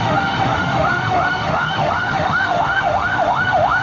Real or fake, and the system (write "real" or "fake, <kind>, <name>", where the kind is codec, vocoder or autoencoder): fake, autoencoder, DAC-VAE